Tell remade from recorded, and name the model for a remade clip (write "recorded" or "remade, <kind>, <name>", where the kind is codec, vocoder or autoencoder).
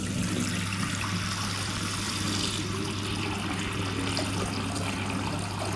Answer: recorded